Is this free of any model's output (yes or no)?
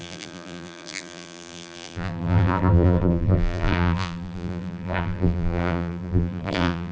no